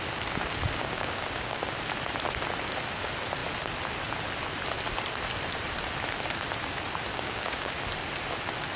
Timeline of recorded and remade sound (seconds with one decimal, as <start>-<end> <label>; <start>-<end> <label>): 0.0-0.8 recorded; 0.8-1.6 remade; 1.6-7.1 recorded; 7.1-7.7 remade; 7.7-8.8 recorded